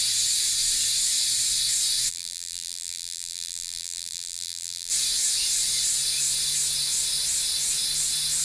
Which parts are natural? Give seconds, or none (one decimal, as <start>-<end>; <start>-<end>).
0.0-2.1; 4.9-8.4